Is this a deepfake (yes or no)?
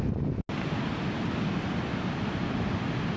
no